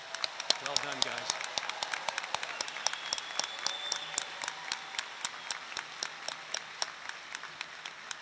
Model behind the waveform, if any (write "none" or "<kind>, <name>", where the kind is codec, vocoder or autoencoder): none